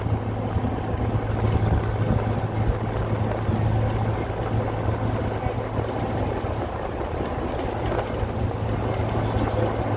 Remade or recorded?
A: recorded